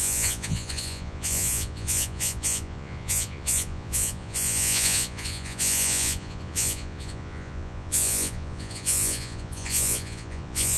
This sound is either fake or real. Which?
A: fake